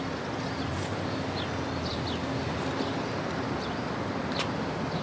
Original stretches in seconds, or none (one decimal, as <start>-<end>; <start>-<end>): 0.0-5.0